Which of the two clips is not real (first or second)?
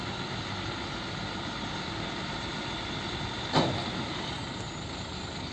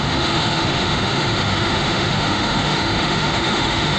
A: second